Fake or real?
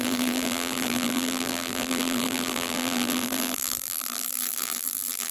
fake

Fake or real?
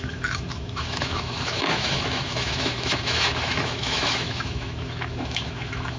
fake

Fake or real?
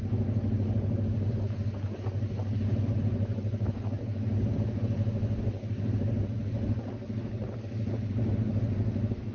real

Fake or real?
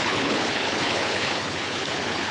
fake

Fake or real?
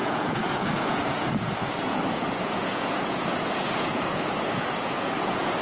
fake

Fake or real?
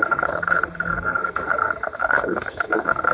fake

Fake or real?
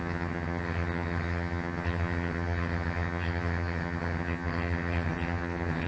fake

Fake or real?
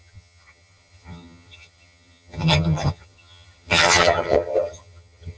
fake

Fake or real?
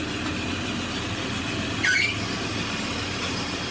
real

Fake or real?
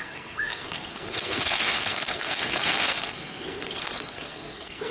fake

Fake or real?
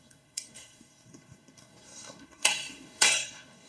fake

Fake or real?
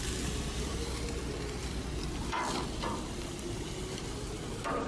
real